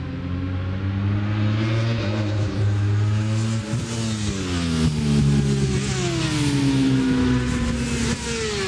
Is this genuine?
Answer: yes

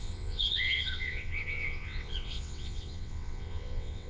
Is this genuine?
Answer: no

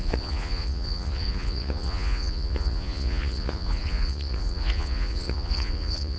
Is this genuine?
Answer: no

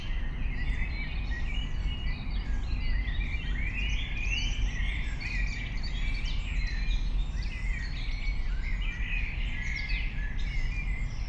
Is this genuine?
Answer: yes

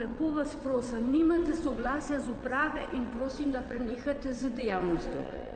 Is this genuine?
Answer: no